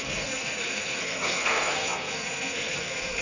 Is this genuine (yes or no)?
no